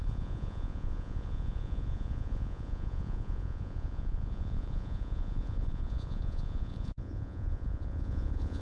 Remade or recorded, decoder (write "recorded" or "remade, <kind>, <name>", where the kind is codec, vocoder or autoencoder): remade, vocoder, Vocos